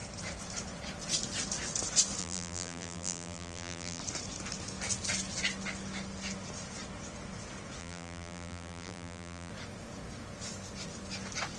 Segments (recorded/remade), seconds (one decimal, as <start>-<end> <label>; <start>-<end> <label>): 0.0-2.2 recorded; 2.2-4.0 remade; 4.0-7.8 recorded; 7.8-9.5 remade; 9.5-11.6 recorded